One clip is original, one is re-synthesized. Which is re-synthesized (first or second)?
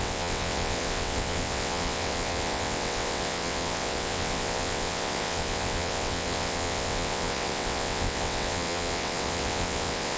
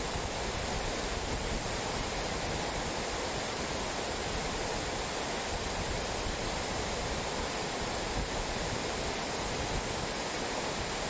first